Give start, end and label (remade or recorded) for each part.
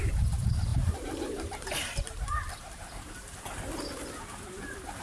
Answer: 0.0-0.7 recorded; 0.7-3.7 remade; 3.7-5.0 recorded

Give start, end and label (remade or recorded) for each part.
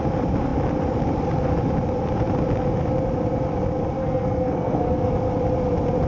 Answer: 0.0-4.0 recorded; 4.0-5.1 remade; 5.1-6.1 recorded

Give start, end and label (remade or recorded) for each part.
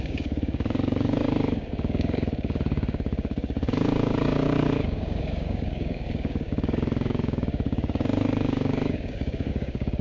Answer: 0.0-10.0 remade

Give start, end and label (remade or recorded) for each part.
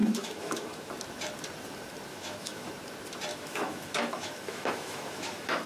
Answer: 0.0-0.9 remade; 0.9-2.1 recorded; 2.1-2.7 remade; 2.7-3.3 recorded; 3.3-5.7 remade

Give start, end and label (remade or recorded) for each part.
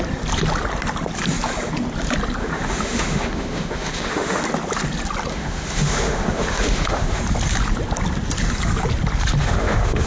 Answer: 0.0-2.4 recorded; 2.4-4.4 remade; 4.4-5.3 recorded; 5.3-7.2 remade; 7.2-9.4 recorded; 9.4-10.1 remade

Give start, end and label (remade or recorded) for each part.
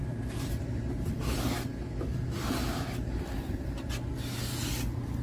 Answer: 0.0-0.9 remade; 0.9-5.2 recorded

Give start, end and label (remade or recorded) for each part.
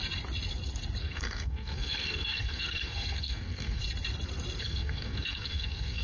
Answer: 0.0-1.0 recorded; 1.0-3.8 remade; 3.8-4.6 recorded; 4.6-6.0 remade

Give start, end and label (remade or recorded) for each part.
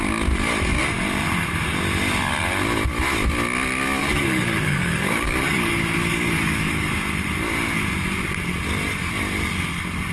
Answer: 0.0-4.0 recorded; 4.0-6.9 remade; 6.9-10.1 recorded